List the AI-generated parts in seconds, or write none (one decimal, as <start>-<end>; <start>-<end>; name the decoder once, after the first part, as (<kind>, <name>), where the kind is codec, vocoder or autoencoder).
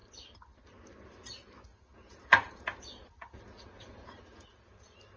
1.7-4.8 (vocoder, Vocos)